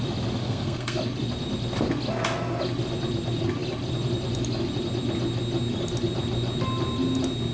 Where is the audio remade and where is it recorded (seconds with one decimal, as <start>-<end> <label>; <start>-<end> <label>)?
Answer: 0.0-0.4 recorded; 0.4-1.0 remade; 1.0-7.5 recorded

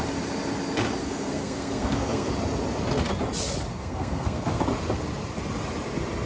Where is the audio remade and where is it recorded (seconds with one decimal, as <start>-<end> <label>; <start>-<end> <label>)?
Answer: 0.0-1.0 recorded; 1.0-2.3 remade; 2.3-3.7 recorded; 3.7-4.6 remade; 4.6-6.3 recorded

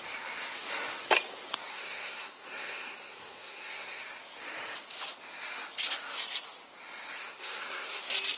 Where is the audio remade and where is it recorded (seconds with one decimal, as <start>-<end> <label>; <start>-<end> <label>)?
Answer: 0.0-1.7 recorded; 1.7-4.0 remade; 4.0-7.2 recorded; 7.2-8.0 remade; 8.0-8.4 recorded

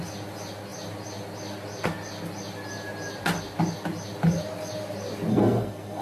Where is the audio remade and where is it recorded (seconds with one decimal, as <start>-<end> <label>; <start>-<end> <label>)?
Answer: 0.0-5.3 recorded; 5.3-6.0 remade

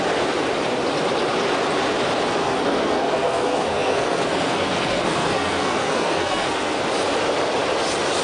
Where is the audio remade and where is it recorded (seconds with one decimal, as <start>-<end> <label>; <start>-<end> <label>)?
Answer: 0.0-2.4 recorded; 2.4-6.8 remade; 6.8-8.2 recorded

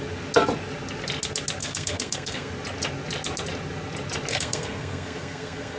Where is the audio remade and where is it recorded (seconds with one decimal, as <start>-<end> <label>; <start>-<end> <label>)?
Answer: 0.0-1.6 recorded; 1.6-2.5 remade; 2.5-4.3 recorded; 4.3-5.8 remade